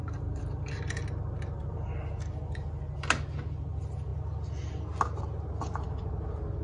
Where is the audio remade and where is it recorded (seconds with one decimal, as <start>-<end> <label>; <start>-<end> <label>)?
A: 0.0-0.7 remade; 0.7-1.6 recorded; 1.6-2.1 remade; 2.1-6.6 recorded